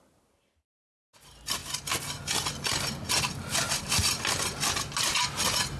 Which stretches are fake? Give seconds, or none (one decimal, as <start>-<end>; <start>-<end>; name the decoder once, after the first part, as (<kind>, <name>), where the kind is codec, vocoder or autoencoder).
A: none